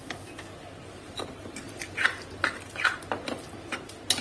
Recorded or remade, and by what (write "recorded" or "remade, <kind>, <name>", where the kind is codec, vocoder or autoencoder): recorded